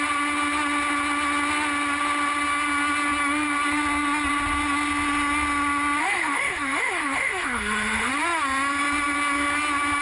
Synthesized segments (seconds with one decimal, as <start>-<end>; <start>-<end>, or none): 6.0-8.1